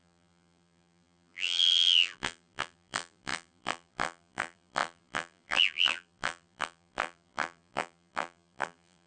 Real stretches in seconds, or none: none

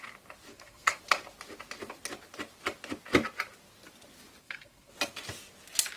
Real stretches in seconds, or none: 0.0-0.5; 1.0-4.4; 4.9-6.0

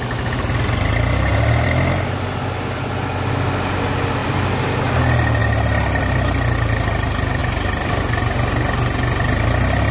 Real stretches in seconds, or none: 0.0-1.3; 3.3-4.2; 4.8-5.4; 6.0-7.4; 8.0-9.9

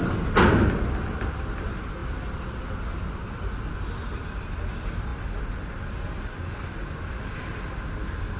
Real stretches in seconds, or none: 0.0-8.4

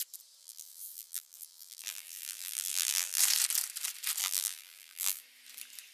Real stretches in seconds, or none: 0.0-0.4; 3.2-4.2; 5.2-5.9

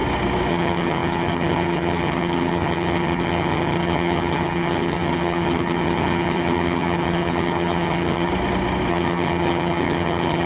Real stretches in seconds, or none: 0.0-0.5; 8.3-8.9